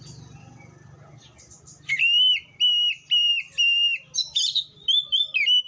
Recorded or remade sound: recorded